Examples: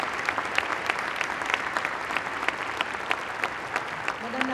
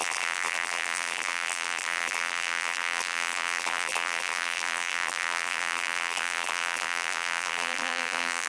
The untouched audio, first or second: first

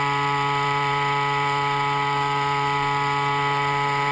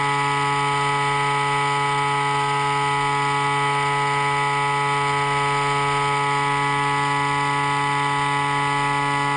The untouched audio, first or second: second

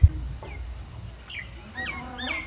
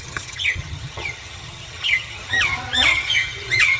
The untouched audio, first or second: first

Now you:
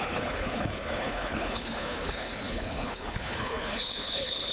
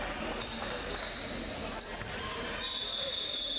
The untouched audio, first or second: second